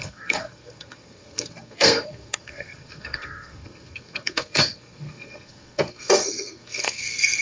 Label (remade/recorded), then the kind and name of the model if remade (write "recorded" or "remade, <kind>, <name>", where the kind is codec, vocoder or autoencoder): remade, codec, SNAC